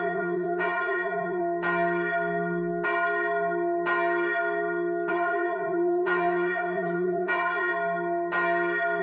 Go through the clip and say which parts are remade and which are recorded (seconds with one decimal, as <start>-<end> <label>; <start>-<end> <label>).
0.0-1.4 remade; 1.4-5.1 recorded; 5.1-7.7 remade; 7.7-9.0 recorded